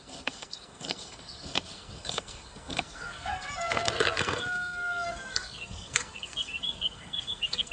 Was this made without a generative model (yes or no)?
no